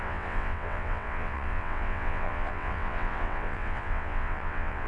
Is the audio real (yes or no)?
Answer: no